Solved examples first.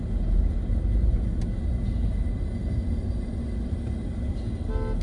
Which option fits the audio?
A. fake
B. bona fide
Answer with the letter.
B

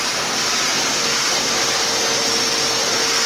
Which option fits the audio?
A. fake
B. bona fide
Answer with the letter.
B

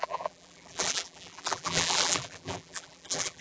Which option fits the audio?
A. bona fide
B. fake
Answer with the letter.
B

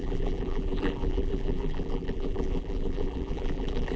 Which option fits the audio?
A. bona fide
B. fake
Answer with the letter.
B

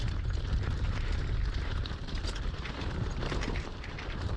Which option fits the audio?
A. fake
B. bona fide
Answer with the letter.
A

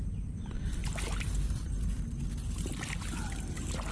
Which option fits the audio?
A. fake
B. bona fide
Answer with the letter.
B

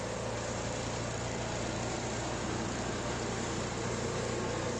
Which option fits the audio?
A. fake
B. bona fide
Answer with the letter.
B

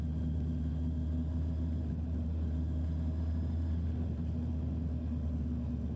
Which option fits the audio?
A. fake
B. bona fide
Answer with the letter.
B